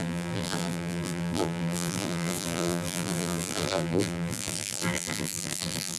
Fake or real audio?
fake